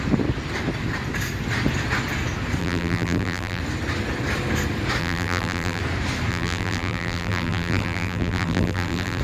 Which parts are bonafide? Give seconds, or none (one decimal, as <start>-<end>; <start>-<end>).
0.0-2.6; 3.6-5.0; 5.8-6.3